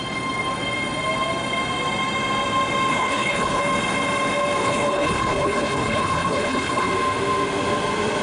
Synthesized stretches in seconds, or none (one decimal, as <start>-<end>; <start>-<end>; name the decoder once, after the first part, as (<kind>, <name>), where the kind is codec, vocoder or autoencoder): 2.9-3.6 (codec, HILCodec); 4.6-6.9